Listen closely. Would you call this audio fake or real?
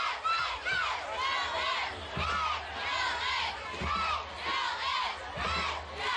real